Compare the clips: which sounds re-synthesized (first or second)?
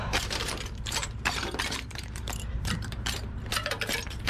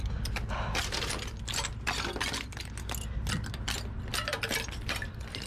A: first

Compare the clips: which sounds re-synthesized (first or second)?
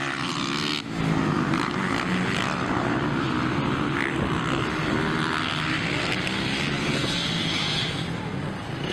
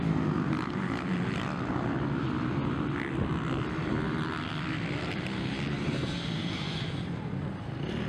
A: second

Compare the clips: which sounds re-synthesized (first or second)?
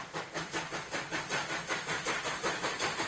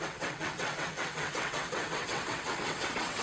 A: second